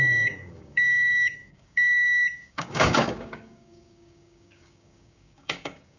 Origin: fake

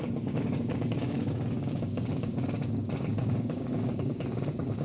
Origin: fake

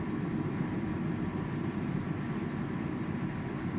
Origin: real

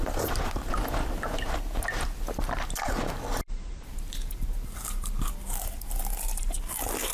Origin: real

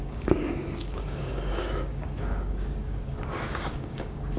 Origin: fake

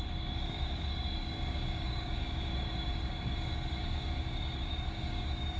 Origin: fake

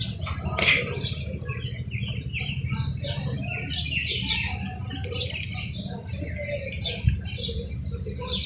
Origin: real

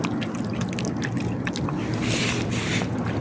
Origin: real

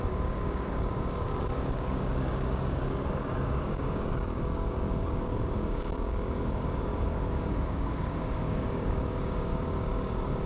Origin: fake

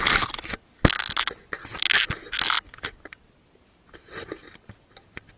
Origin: real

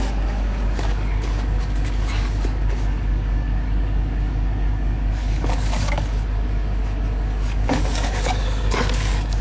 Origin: fake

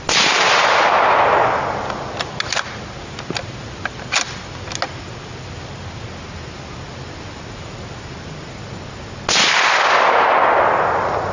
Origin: real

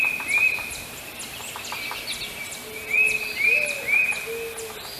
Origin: real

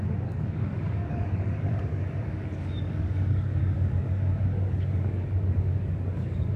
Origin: fake